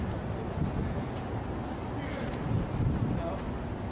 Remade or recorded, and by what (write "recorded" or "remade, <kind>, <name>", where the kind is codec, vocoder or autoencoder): recorded